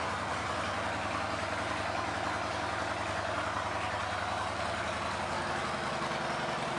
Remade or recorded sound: recorded